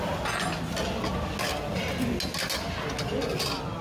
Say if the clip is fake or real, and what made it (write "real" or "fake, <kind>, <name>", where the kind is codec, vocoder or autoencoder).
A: real